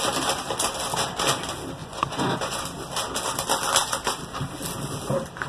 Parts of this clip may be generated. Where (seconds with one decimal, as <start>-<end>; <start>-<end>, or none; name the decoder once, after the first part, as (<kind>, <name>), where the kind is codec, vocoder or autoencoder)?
1.8-2.6 (vocoder, Vocos)